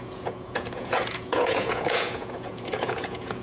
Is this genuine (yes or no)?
no